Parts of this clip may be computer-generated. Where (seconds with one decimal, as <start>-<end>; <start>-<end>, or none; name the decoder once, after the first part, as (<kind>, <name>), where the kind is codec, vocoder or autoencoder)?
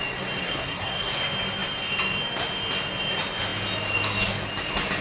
0.4-1.1 (codec, SNAC)